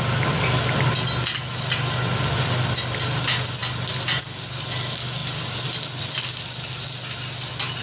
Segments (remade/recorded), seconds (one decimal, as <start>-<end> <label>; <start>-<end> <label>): 0.0-7.8 recorded